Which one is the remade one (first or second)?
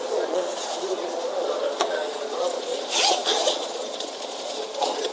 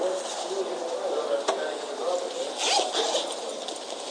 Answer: first